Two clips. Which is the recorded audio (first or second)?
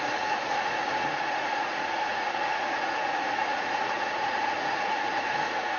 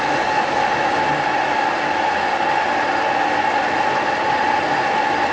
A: second